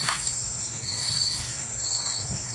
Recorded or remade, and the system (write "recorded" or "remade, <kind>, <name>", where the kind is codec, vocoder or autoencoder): remade, codec, SNAC